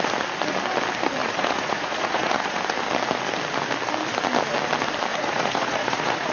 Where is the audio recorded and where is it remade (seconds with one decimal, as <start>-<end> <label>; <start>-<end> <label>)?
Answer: 0.0-1.2 recorded; 1.2-2.6 remade; 2.6-5.1 recorded; 5.1-6.3 remade